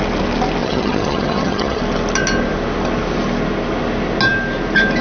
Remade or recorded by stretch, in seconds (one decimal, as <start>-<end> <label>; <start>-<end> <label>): 0.0-0.6 recorded; 0.6-1.8 remade; 1.8-5.0 recorded